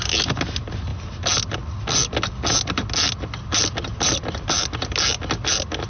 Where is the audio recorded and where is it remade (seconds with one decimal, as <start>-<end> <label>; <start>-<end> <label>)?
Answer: 0.0-5.9 recorded